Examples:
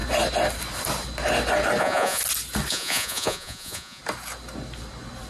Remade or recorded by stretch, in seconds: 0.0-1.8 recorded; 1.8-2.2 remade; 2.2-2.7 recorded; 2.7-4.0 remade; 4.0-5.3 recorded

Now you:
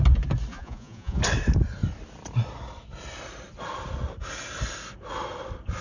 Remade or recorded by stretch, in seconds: 0.0-0.5 recorded; 0.5-1.2 remade; 1.2-5.8 recorded

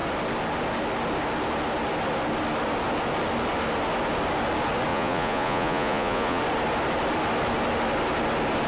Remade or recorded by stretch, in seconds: 0.0-4.9 recorded; 4.9-6.4 remade; 6.4-8.7 recorded

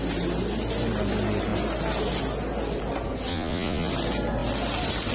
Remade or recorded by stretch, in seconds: 0.0-3.3 recorded; 3.3-3.9 remade; 3.9-5.1 recorded

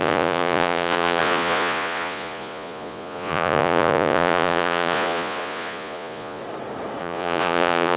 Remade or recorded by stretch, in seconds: 0.0-6.4 remade; 6.4-7.0 recorded; 7.0-8.0 remade

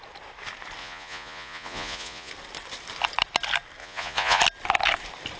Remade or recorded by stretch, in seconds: 0.0-0.8 recorded; 0.8-2.3 remade; 2.3-3.8 recorded; 3.8-4.4 remade; 4.4-5.4 recorded

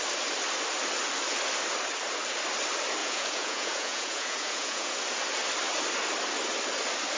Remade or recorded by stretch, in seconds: 0.0-3.0 recorded; 3.0-5.0 remade; 5.0-7.2 recorded